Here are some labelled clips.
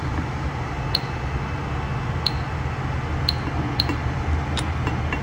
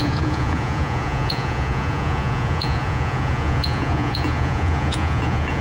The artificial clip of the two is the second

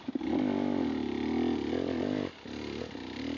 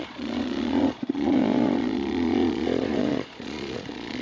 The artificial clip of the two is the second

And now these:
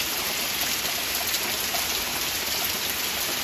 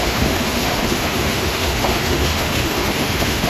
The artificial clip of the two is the second